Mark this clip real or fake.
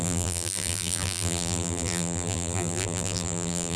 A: fake